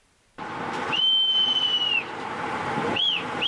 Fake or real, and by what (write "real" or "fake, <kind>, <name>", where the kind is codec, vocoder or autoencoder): real